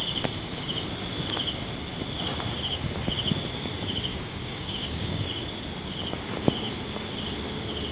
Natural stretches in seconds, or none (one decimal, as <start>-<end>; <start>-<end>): 0.0-4.1; 5.4-7.9